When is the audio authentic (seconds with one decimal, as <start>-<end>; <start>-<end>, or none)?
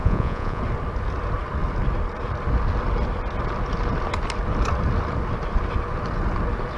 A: 0.6-6.8